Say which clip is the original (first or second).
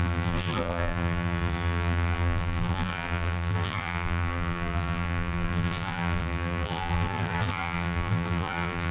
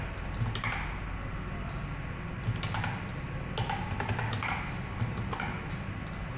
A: second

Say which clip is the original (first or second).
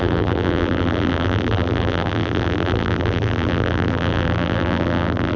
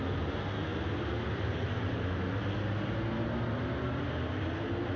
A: second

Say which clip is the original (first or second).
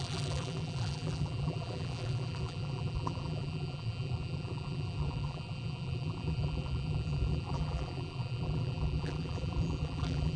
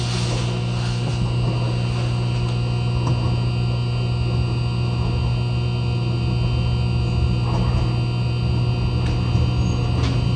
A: second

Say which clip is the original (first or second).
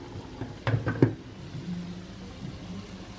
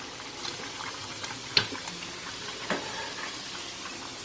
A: first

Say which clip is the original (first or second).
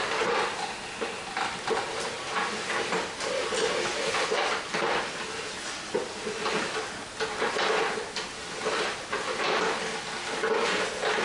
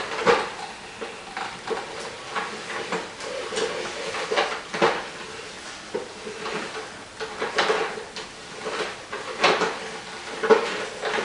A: first